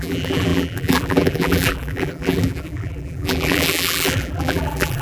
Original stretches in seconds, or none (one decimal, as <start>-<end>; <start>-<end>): none